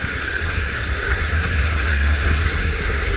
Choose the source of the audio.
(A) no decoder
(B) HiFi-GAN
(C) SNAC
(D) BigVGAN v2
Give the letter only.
C